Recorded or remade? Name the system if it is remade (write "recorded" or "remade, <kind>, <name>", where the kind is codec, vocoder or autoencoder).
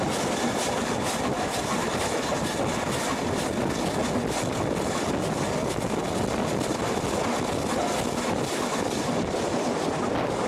recorded